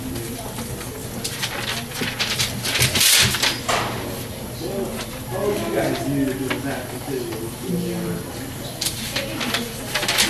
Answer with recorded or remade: recorded